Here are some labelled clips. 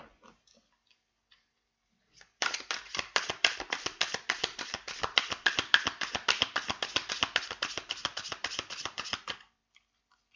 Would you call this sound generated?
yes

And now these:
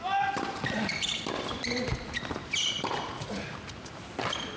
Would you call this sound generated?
yes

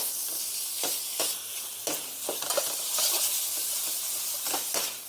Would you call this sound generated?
yes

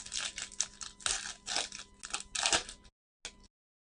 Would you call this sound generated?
no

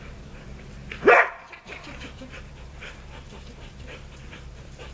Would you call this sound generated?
yes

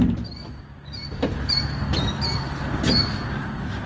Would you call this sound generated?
no